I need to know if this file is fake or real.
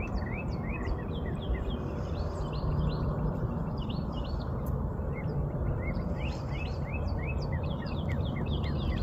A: fake